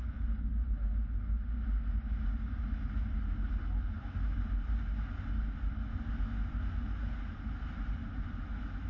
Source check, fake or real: real